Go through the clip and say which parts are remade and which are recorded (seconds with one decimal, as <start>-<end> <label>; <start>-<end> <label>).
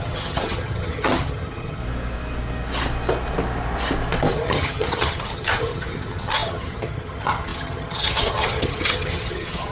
0.0-1.8 remade; 1.8-4.3 recorded; 4.3-9.7 remade